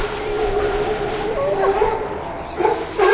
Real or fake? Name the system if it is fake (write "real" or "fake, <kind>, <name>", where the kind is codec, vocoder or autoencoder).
fake, vocoder, BigVGAN v2